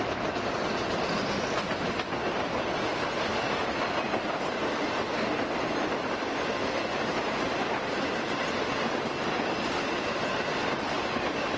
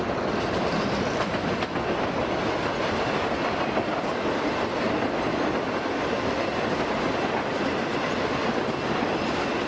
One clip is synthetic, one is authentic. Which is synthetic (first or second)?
second